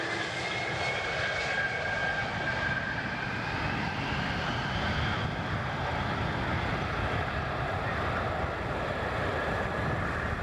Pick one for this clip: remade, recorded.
recorded